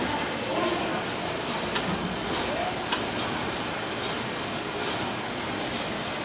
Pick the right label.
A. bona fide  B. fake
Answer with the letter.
A